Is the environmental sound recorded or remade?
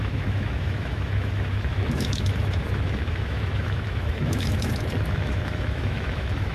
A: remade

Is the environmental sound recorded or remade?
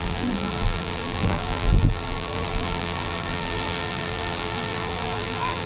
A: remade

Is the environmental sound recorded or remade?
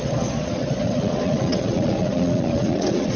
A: remade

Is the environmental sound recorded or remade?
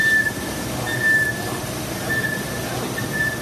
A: recorded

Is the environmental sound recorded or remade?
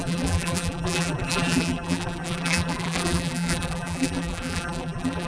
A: remade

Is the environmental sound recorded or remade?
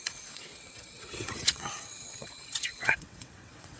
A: remade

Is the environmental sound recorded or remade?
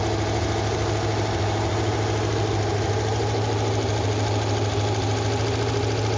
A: recorded